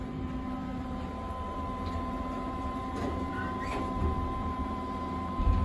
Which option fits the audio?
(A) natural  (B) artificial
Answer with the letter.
B